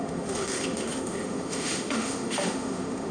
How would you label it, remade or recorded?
remade